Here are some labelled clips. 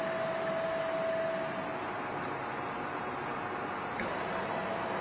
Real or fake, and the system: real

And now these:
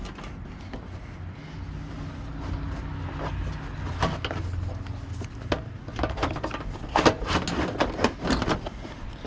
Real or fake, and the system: real